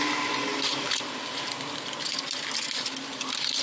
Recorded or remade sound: recorded